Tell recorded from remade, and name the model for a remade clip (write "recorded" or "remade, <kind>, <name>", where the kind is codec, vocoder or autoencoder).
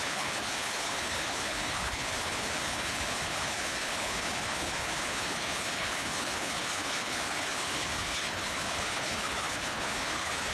remade, codec, HILCodec